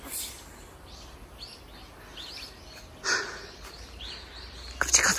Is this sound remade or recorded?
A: recorded